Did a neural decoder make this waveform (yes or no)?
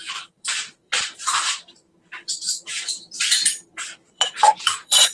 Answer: yes